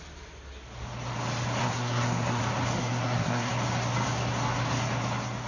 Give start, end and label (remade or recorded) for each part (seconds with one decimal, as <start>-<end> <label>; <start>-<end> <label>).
0.0-1.6 recorded; 1.6-2.4 remade; 2.4-2.8 recorded; 2.8-3.5 remade; 3.5-5.5 recorded